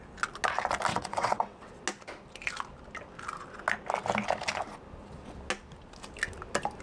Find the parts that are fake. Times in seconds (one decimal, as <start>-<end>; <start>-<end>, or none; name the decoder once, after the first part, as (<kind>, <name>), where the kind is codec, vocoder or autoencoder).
0.9-1.7 (vocoder, WaveNeXt)